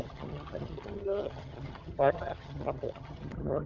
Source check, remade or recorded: remade